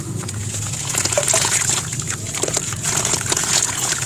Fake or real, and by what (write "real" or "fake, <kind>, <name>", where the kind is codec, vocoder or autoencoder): fake, vocoder, Vocos